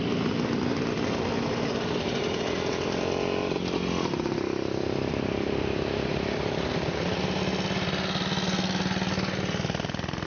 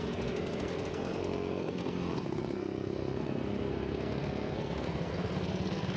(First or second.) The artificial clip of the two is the second